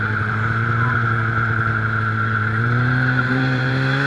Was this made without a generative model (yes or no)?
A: no